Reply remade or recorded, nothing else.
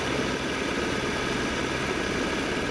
recorded